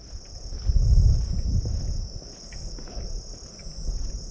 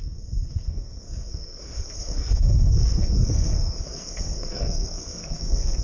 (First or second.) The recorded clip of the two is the first